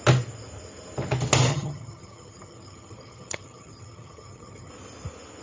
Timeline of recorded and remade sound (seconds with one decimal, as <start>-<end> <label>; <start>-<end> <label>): 0.0-1.5 recorded; 1.5-4.7 remade; 4.7-5.4 recorded